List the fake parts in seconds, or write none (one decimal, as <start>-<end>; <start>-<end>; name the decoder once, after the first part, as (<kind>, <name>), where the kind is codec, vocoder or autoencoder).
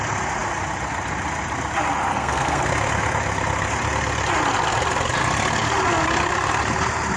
2.1-2.7 (codec, SNAC)